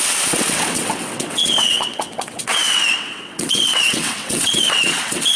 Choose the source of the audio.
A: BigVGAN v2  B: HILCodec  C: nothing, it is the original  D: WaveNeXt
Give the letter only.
D